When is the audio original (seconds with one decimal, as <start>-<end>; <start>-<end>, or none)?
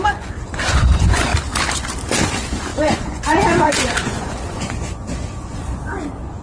1.3-2.2